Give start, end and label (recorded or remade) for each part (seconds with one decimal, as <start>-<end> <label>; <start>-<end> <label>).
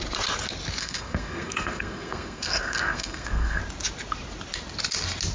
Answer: 0.0-0.8 recorded; 0.8-3.6 remade; 3.6-5.3 recorded